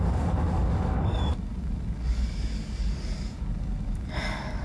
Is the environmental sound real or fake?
fake